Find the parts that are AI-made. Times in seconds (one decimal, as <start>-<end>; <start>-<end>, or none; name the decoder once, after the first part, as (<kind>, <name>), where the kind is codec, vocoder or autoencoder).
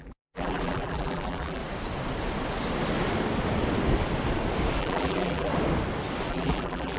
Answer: 0.0-1.6 (vocoder, BigVGAN v2); 4.8-5.5; 6.3-7.0